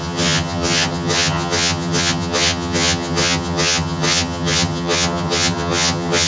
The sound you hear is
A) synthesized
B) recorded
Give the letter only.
A